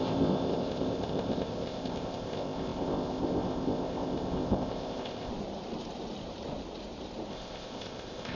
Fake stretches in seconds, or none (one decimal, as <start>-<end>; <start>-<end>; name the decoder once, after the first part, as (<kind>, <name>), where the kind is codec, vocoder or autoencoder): 0.0-5.3 (codec, ZipCodec); 7.3-8.3